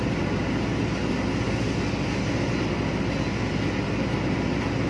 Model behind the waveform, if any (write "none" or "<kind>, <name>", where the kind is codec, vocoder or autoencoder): none